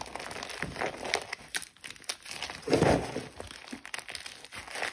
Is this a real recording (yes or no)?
yes